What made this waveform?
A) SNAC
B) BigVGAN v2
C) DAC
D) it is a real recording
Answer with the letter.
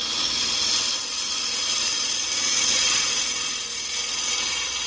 D